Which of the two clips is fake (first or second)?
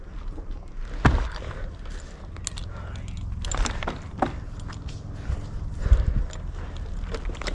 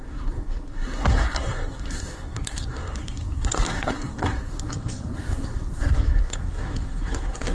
second